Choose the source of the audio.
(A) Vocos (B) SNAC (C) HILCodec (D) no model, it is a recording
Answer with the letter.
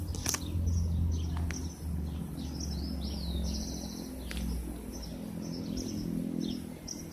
D